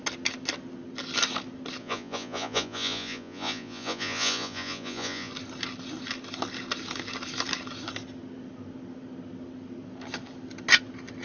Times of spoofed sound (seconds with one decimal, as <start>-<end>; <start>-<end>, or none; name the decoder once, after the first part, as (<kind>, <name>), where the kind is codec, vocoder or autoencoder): 1.8-5.3 (vocoder, Vocos)